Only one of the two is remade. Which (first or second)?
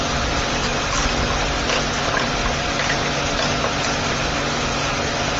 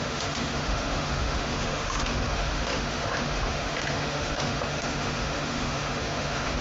second